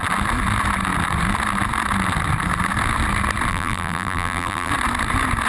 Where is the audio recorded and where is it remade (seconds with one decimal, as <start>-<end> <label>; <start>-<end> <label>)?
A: 0.0-3.5 recorded; 3.5-4.7 remade; 4.7-5.5 recorded